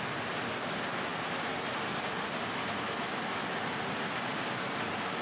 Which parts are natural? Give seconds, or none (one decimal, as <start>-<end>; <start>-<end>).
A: 0.0-5.2